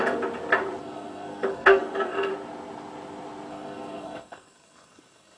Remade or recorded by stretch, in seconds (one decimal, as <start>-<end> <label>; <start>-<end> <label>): 0.0-0.8 recorded; 0.8-2.3 remade; 2.3-3.5 recorded; 3.5-5.4 remade